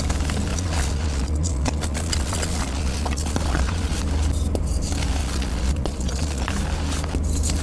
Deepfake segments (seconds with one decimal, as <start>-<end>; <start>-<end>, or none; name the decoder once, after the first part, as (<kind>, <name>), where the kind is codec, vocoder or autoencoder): 0.5-4.0 (vocoder, Vocos); 5.2-6.5